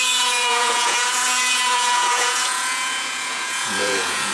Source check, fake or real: fake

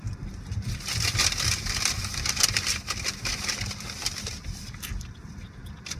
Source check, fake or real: real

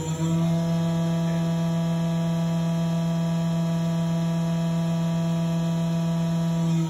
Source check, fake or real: real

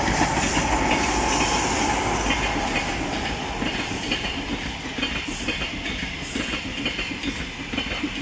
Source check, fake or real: real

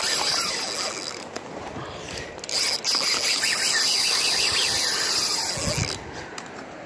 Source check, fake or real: real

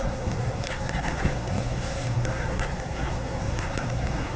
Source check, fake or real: fake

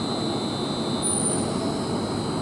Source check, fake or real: real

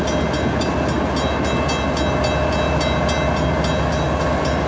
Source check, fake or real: real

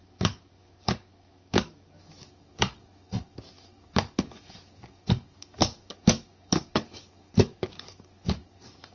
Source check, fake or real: fake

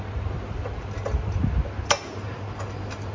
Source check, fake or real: real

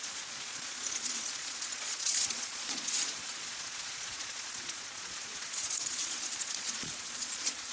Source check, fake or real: fake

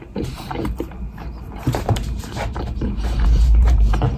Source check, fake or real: fake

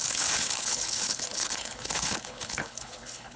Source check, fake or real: fake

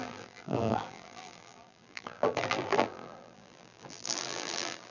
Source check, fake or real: fake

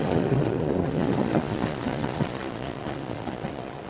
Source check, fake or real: fake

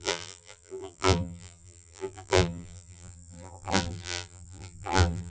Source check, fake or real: fake